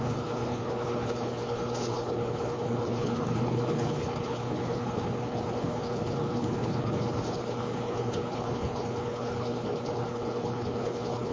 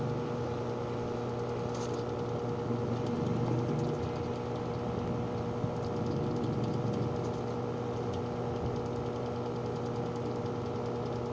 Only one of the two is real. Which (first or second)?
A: second